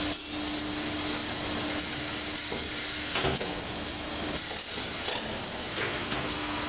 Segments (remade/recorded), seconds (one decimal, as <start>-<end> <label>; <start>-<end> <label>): 0.0-3.0 recorded; 3.0-3.6 remade; 3.6-5.5 recorded; 5.5-6.7 remade